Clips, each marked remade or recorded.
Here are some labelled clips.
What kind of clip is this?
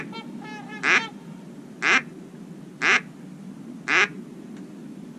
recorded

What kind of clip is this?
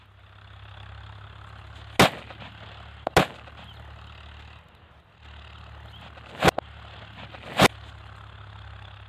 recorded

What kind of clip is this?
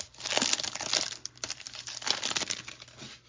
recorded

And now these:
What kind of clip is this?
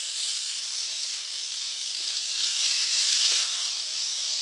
remade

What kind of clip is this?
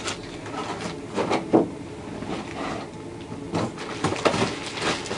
recorded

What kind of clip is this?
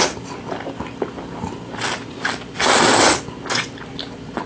recorded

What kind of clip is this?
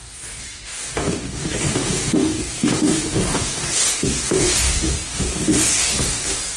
remade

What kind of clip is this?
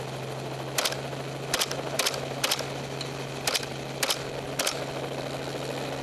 recorded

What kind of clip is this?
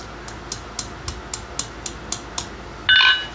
recorded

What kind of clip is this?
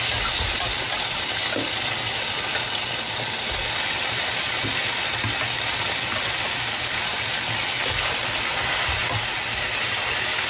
recorded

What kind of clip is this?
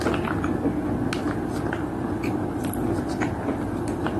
recorded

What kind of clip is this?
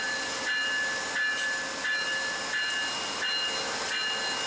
recorded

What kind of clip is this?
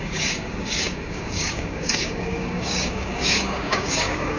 remade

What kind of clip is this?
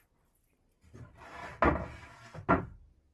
recorded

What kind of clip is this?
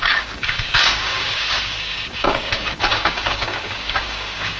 remade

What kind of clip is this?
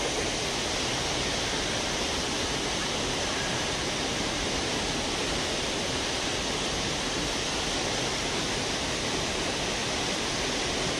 recorded